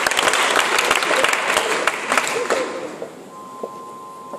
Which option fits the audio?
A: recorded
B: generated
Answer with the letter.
A